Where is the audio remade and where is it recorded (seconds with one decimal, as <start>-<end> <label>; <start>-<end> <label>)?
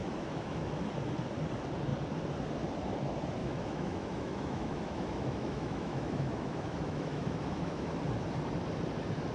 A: 0.0-0.7 remade; 0.7-3.4 recorded; 3.4-7.9 remade; 7.9-9.3 recorded